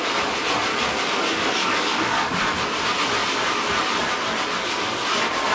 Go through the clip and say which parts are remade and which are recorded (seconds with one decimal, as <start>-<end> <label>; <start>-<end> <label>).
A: 0.0-0.7 recorded; 0.7-2.4 remade; 2.4-5.5 recorded